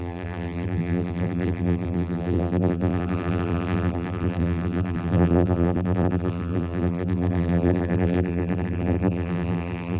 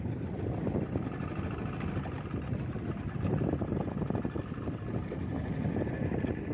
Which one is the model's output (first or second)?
first